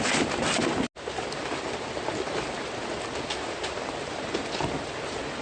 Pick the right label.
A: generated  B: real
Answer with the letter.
B